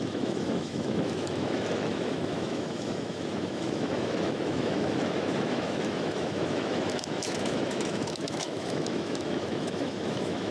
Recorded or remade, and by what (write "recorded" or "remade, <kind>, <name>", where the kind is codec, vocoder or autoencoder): remade, autoencoder, DAC-VAE